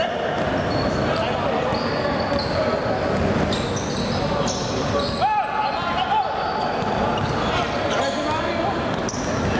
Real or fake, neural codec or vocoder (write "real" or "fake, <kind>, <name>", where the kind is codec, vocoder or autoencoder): real